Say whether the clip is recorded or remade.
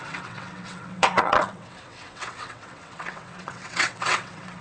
remade